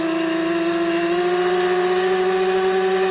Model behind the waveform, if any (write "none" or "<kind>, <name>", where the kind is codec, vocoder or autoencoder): none